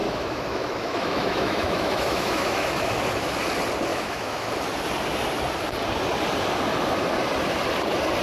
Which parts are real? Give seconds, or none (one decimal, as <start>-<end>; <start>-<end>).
2.9-3.9; 4.5-8.2